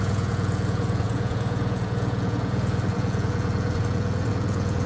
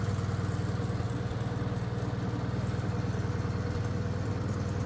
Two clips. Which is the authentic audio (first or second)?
second